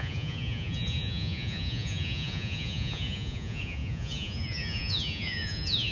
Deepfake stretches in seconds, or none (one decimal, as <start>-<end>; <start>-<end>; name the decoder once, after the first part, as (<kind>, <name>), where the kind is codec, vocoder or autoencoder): 0.0-5.9 (vocoder, Vocos)